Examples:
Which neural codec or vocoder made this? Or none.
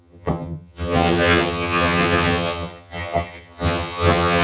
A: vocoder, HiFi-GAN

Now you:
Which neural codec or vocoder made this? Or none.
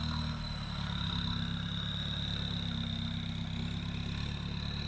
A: none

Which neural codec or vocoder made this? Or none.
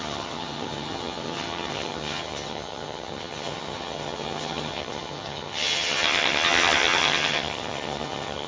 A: vocoder, HiFi-GAN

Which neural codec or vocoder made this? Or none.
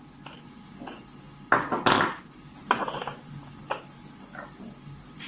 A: none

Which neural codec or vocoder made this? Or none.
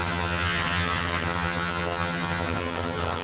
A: vocoder, HiFi-GAN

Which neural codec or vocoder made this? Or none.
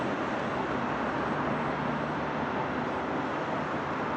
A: none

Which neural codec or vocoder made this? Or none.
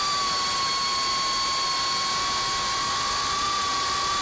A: none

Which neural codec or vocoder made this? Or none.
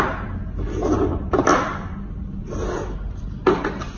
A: none